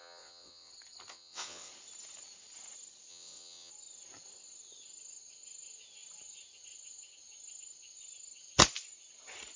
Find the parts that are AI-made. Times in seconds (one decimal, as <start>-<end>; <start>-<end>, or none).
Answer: 0.0-0.7; 1.1-1.7; 3.1-3.7